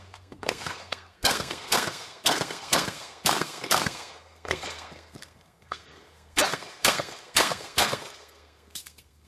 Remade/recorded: remade